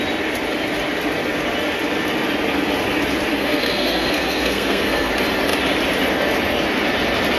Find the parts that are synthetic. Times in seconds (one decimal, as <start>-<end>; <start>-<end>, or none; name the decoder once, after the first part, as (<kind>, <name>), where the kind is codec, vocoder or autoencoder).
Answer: 3.3-5.1 (codec, SNAC)